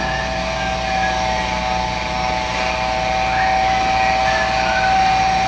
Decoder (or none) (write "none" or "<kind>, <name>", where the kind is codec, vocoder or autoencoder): none